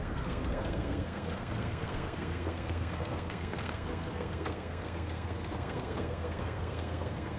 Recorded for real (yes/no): no